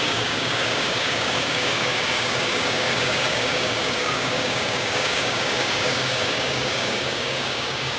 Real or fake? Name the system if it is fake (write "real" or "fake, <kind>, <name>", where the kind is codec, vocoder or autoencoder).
fake, codec, DAC